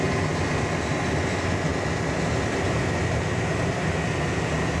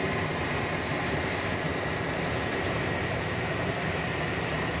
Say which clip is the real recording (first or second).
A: first